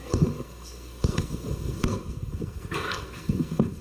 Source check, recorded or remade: remade